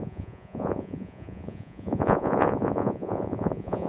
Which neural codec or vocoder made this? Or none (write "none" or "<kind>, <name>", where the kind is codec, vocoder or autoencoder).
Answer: vocoder, Vocos